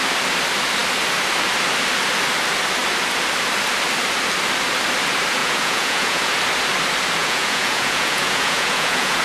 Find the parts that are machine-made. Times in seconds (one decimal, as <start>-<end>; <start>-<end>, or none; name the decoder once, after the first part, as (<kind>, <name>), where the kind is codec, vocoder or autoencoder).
5.4-6.3 (vocoder, Vocos); 7.2-9.2